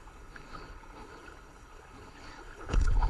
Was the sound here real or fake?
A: fake